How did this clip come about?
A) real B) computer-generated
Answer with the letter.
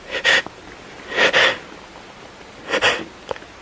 A